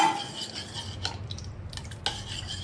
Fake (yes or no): no